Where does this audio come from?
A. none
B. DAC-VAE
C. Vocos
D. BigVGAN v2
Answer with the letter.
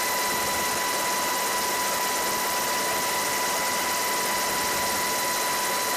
A